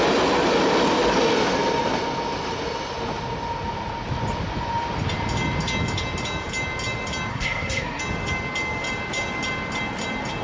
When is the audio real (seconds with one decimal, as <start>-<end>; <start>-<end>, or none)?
0.0-7.3; 8.0-10.4